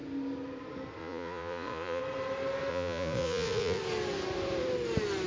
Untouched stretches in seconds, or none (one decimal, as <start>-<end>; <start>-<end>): 0.0-1.0; 2.0-2.7; 3.8-5.3